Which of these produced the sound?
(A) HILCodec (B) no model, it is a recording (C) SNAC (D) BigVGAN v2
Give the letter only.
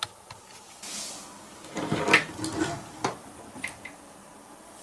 B